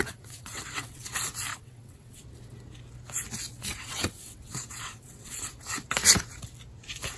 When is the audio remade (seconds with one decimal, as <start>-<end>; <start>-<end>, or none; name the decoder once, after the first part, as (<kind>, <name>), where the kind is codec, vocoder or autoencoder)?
0.0-1.1 (vocoder, WaveNeXt); 1.5-2.2; 3.5-5.4